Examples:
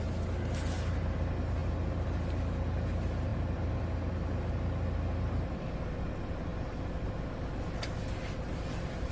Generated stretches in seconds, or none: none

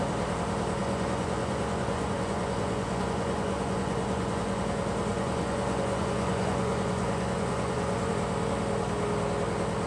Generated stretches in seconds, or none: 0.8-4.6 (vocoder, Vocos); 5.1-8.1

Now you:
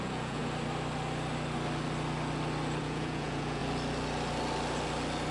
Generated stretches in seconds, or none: 0.0-0.4 (vocoder, Vocos); 2.8-3.6